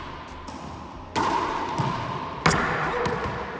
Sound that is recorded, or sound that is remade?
recorded